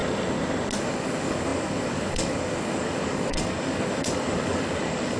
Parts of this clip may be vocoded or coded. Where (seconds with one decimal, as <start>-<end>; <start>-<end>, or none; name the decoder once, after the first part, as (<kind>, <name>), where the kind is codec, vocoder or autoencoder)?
0.8-5.2 (codec, DAC)